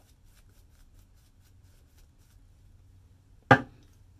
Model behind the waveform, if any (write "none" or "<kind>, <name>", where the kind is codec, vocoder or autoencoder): none